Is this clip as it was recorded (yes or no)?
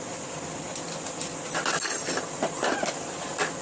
yes